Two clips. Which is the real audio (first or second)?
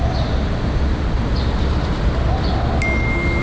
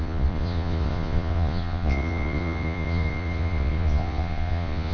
first